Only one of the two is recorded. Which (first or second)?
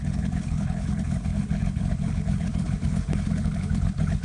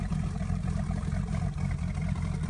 second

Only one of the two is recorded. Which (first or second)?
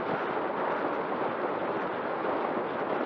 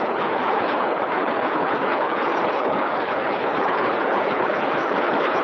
first